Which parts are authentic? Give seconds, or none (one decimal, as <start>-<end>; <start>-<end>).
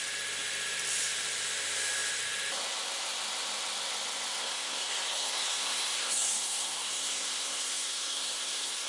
0.0-4.4